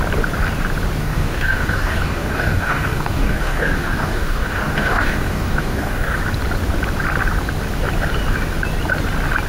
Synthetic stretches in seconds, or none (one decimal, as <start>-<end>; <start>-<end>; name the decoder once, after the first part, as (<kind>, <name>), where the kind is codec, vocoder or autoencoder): 1.0-6.2 (codec, DAC)